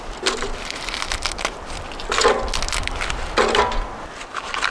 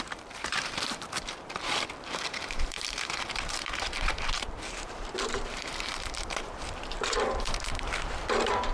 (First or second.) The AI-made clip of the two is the second